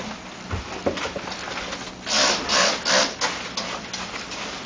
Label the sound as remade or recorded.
recorded